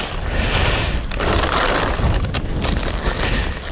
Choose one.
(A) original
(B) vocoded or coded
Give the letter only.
A